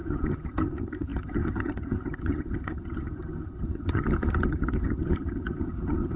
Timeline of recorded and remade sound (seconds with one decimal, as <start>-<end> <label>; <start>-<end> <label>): 0.0-6.2 remade